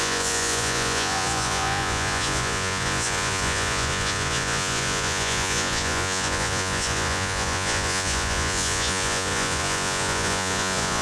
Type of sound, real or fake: fake